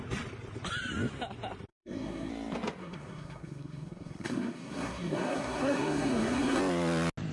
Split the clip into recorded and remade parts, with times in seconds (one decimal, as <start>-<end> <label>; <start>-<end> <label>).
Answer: 0.0-1.7 recorded; 1.7-2.3 remade; 2.3-2.8 recorded; 2.8-6.6 remade; 6.6-7.3 recorded